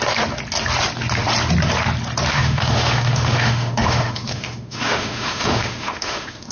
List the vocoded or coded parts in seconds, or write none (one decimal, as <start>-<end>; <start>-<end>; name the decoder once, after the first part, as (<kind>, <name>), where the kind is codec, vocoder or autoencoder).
2.3-6.5 (autoencoder, DAC-VAE)